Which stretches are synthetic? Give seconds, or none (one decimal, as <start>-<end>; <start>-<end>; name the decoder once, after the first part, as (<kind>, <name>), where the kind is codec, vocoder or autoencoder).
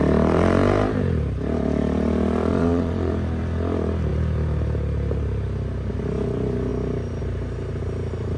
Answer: 2.5-3.1 (vocoder, Vocos)